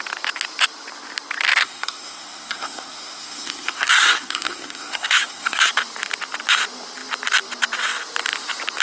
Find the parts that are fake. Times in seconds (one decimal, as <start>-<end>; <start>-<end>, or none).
1.6-5.7